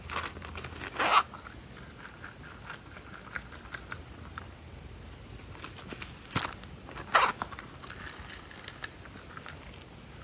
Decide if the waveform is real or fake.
real